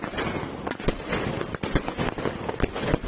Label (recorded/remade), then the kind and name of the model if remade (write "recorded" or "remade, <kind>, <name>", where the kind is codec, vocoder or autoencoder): recorded